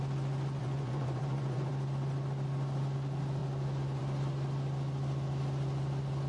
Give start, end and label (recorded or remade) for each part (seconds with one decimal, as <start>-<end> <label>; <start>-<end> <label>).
0.0-0.6 recorded; 0.6-1.7 remade; 1.7-6.3 recorded